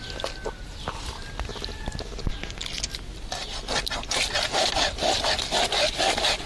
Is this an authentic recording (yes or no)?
yes